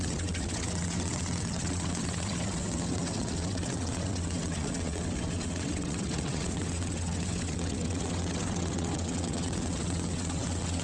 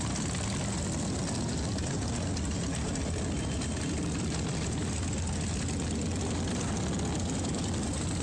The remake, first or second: first